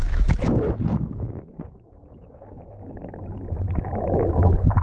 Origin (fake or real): fake